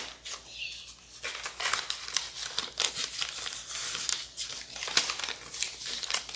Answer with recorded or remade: recorded